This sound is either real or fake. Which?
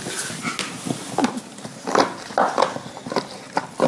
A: real